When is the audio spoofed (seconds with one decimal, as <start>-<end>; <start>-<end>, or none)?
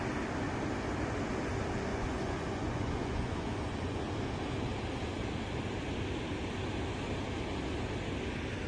1.9-4.1